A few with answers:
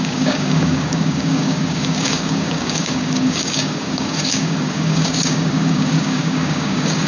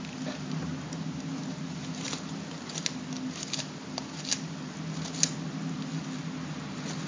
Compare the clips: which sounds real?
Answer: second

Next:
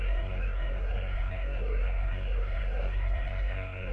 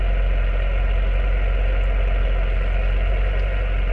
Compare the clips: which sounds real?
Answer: second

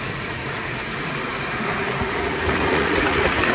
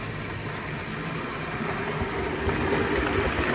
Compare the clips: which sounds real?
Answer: second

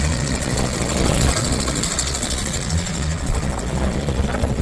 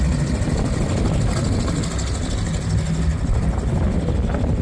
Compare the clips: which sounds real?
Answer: second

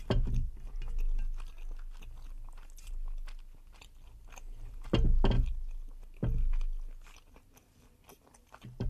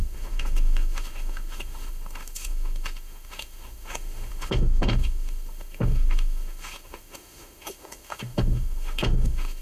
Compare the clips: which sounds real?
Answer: first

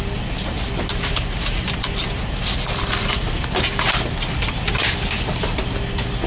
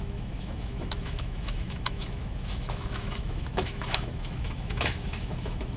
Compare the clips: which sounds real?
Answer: first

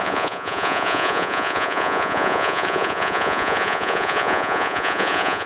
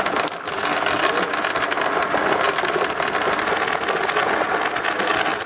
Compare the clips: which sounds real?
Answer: second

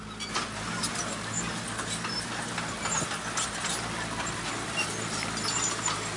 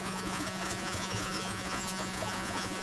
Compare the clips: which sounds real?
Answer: first